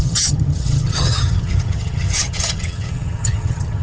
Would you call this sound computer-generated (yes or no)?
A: yes